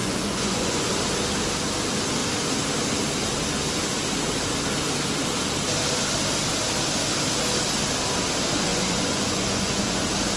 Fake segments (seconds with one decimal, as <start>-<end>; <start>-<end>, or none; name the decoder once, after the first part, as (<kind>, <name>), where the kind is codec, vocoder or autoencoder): 0.0-0.9 (vocoder, Vocos); 8.7-10.0